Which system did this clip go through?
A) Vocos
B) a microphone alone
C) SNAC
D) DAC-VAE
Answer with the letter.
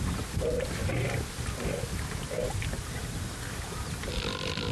B